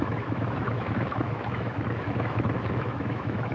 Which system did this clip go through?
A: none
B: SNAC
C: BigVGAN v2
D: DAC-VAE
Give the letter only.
D